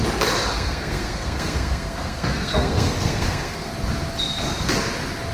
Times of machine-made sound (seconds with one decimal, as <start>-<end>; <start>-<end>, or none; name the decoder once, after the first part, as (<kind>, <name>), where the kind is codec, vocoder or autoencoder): 0.5-3.7 (codec, SNAC)